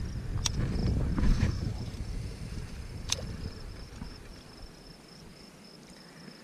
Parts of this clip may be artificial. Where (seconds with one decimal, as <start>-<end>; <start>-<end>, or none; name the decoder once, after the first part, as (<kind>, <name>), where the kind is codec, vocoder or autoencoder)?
0.8-4.6 (vocoder, BigVGAN v2)